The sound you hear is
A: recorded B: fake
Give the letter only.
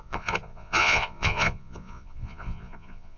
B